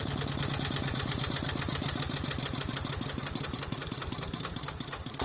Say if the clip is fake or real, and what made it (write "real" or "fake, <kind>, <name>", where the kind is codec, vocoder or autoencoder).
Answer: real